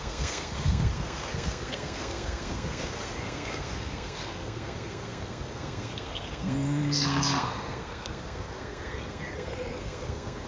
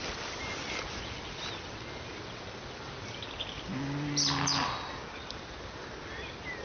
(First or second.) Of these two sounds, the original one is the second